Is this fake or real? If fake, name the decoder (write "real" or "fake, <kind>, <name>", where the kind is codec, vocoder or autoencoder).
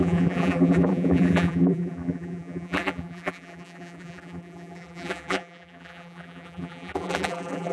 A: fake, vocoder, BigVGAN v2